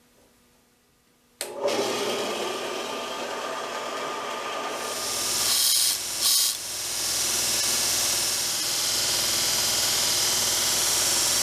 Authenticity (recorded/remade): recorded